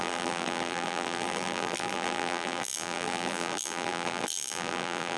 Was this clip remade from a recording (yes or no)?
yes